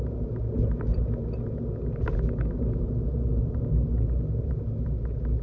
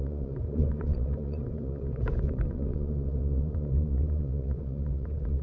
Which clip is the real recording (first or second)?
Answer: first